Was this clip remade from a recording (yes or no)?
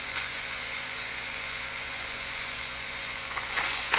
yes